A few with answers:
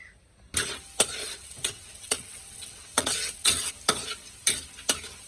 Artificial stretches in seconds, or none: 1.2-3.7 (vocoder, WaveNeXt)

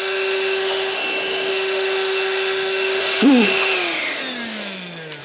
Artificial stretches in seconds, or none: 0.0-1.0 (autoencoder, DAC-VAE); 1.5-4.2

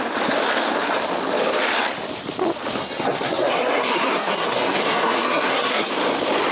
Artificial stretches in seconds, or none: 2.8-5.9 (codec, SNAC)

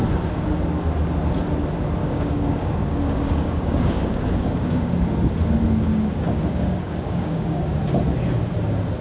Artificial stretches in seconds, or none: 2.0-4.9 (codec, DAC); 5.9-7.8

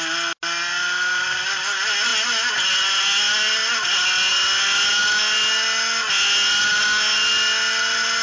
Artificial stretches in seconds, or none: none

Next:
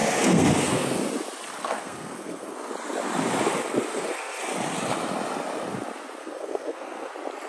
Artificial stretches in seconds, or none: 0.0-1.0 (codec, SNAC); 1.6-2.7; 3.9-4.4; 6.2-7.1